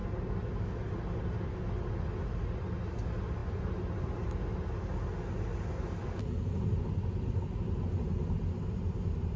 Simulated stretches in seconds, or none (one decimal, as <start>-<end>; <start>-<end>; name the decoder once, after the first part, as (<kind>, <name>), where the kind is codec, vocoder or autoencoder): none

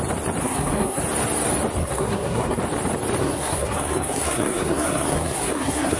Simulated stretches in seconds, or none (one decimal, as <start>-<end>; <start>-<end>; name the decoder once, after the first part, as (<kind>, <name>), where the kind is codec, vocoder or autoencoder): 0.4-1.0 (codec, SNAC); 1.8-2.6; 3.2-6.0

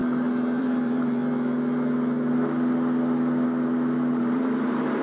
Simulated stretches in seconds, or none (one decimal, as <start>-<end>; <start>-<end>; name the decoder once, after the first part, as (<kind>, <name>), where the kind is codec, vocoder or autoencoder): 0.6-1.2 (vocoder, BigVGAN v2); 4.2-5.0

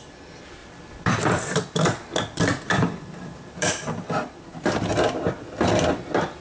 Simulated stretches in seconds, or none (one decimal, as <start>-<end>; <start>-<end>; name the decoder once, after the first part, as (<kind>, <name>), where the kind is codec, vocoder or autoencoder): 0.6-3.7 (vocoder, BigVGAN v2)

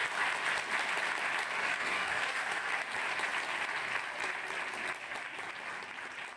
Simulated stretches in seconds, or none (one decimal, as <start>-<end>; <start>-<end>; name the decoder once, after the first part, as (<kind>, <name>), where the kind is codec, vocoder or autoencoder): 1.6-2.7 (codec, DAC)

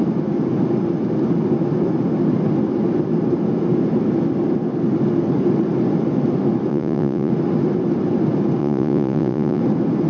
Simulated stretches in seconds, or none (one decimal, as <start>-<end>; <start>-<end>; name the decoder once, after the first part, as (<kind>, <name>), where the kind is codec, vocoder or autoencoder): 6.7-7.3 (vocoder, Vocos); 8.6-9.6

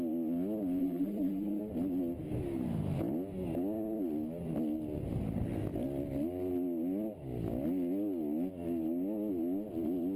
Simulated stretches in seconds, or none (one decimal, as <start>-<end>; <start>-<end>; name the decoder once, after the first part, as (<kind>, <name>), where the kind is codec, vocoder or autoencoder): 0.8-1.6 (vocoder, BigVGAN v2)

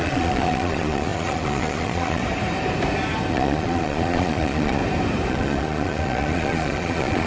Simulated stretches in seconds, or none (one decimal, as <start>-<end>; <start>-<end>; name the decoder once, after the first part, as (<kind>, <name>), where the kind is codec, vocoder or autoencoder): 0.0-2.2 (vocoder, Vocos); 3.3-4.8; 5.3-7.3